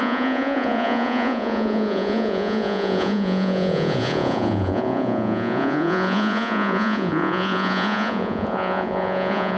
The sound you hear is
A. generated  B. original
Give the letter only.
A